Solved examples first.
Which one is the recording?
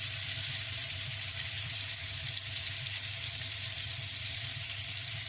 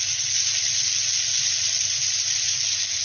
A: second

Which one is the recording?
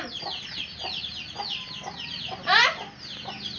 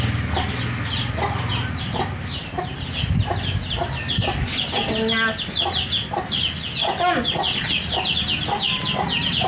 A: second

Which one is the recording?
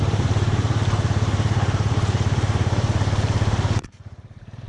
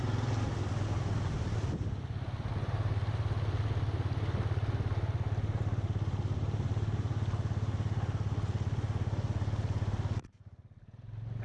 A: second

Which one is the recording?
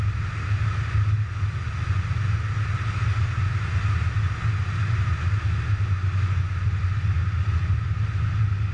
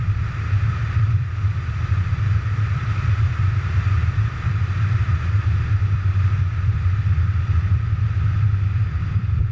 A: first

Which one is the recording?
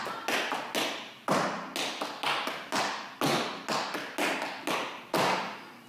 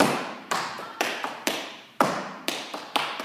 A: first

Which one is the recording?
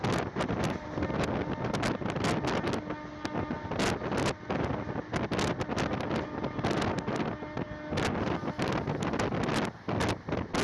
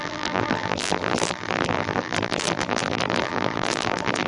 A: first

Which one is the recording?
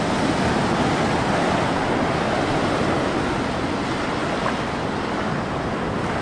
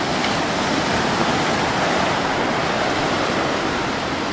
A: first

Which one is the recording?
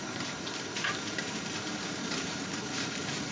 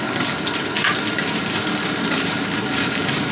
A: second